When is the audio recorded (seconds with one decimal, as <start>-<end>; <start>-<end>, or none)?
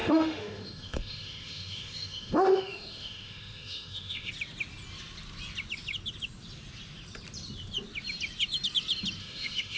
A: 4.3-9.2